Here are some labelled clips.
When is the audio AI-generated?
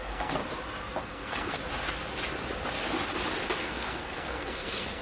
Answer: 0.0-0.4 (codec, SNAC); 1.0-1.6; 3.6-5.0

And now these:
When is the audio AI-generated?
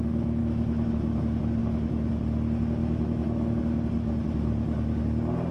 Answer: 0.4-0.9 (autoencoder, DAC-VAE); 1.6-2.1; 2.8-3.6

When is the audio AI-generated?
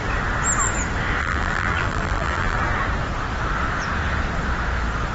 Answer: 1.2-2.6 (vocoder, BigVGAN v2)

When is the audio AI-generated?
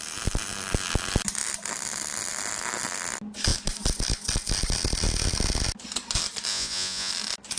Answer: 6.5-7.1 (vocoder, Vocos)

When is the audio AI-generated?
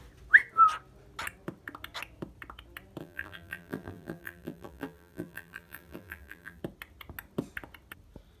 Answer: 3.0-6.6 (vocoder, BigVGAN v2)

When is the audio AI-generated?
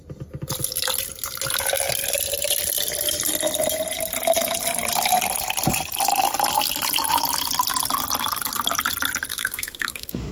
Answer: 9.3-10.3 (autoencoder, DAC-VAE)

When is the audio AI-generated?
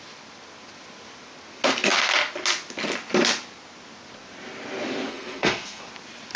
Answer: 5.1-5.8 (codec, SNAC)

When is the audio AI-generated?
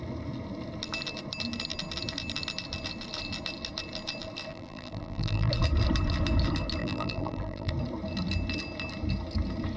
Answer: 4.5-5.5 (vocoder, BigVGAN v2); 6.8-7.7